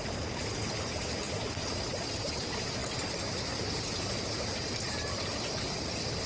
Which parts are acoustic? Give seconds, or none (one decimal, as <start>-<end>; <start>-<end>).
0.0-6.3